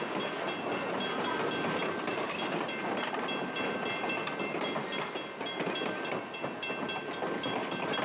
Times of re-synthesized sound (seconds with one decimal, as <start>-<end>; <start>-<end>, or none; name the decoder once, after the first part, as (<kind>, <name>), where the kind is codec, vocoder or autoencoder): 2.1-4.6 (vocoder, BigVGAN v2)